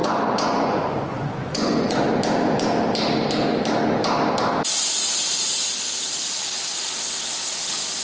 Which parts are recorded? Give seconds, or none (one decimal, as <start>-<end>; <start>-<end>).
2.1-8.0